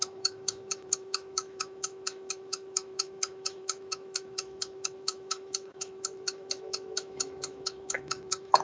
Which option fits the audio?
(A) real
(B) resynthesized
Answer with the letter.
B